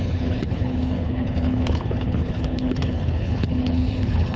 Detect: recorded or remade remade